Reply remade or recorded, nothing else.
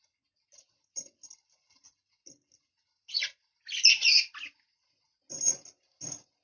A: recorded